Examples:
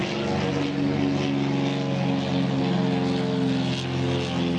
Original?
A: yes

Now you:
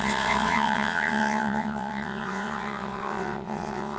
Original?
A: no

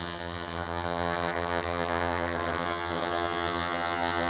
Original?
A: no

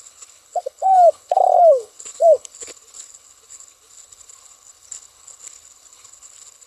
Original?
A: no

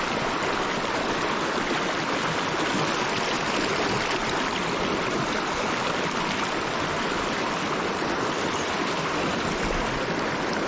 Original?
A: yes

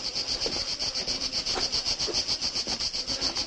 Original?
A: yes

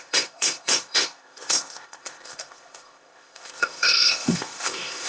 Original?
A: no